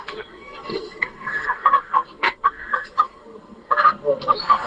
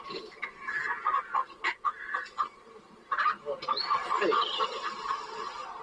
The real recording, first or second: second